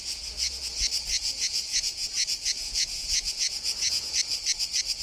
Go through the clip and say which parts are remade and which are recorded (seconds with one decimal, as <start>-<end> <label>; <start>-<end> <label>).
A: 0.0-0.6 remade; 0.6-1.1 recorded; 1.1-4.1 remade; 4.1-5.0 recorded